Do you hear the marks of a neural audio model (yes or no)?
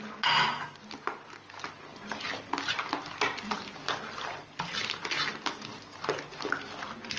no